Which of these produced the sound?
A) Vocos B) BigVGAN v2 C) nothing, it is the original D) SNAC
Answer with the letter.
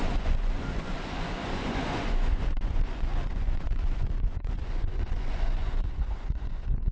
A